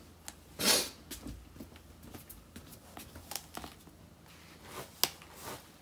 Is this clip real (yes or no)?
yes